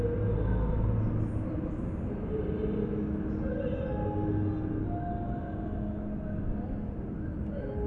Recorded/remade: recorded